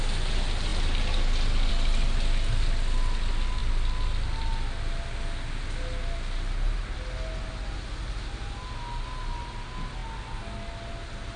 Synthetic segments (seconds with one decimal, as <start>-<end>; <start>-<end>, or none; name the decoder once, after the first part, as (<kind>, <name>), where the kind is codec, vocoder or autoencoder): none